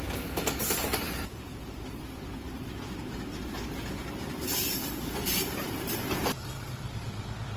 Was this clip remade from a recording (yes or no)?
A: yes